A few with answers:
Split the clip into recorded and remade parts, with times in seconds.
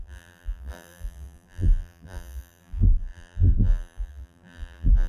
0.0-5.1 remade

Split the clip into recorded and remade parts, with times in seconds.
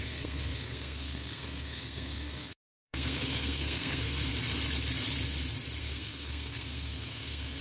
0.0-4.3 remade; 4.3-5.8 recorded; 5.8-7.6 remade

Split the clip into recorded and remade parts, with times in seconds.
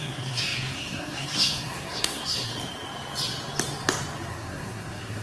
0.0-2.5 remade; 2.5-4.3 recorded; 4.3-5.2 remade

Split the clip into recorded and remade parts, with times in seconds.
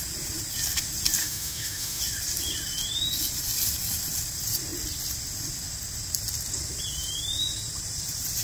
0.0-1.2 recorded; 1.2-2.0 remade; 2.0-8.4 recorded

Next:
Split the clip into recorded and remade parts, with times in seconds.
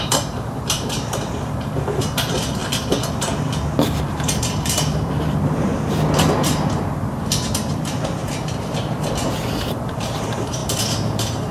0.0-2.6 remade; 2.6-4.0 recorded; 4.0-5.7 remade; 5.7-6.3 recorded; 6.3-11.5 remade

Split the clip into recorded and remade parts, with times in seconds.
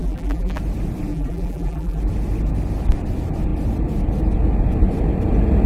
0.0-0.6 remade; 0.6-1.1 recorded; 1.1-2.0 remade; 2.0-5.7 recorded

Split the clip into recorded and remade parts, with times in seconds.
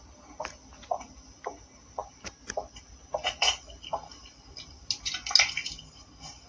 0.0-6.5 recorded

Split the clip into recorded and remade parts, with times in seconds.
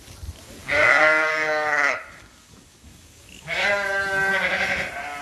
0.0-0.6 recorded; 0.6-3.7 remade; 3.7-5.2 recorded